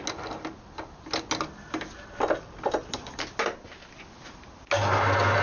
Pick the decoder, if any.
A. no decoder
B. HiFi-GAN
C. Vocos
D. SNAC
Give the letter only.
A